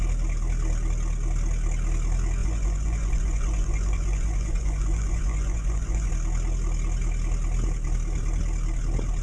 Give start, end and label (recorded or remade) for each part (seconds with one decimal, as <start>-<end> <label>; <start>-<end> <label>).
0.0-2.4 recorded; 2.4-6.1 remade; 6.1-9.2 recorded